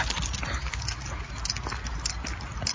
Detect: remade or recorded recorded